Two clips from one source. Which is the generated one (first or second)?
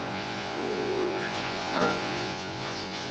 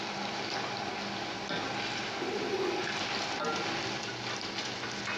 first